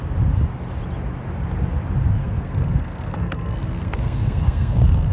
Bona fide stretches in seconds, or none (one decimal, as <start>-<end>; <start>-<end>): 0.0-2.2